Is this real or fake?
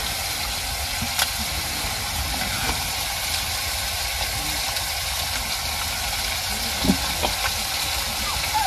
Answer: real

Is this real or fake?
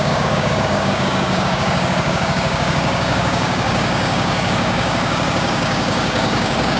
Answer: fake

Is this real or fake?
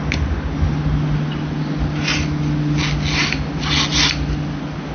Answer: real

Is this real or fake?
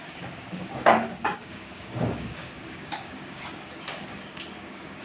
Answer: fake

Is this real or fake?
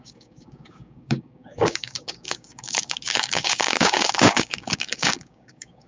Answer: fake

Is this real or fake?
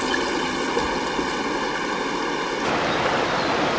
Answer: real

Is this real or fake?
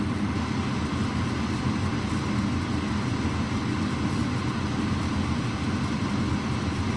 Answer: real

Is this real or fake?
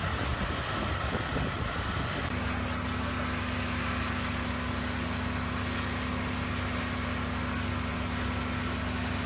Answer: real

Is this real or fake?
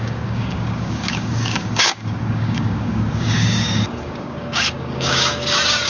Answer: fake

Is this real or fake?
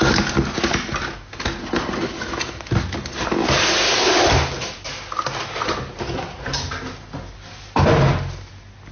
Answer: real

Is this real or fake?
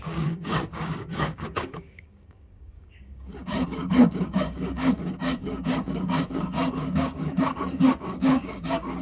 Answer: fake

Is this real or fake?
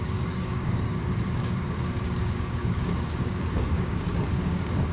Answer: fake